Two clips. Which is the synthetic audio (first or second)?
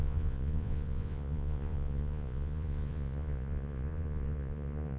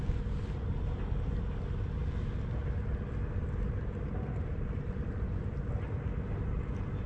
first